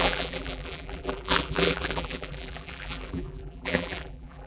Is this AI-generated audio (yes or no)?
yes